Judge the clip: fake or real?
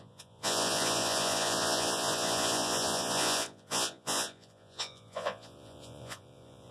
fake